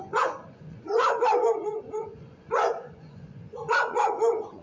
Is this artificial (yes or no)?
yes